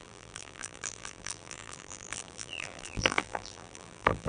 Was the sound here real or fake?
fake